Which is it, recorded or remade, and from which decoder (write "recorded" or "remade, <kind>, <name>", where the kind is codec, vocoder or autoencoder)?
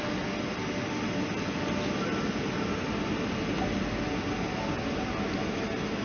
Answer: recorded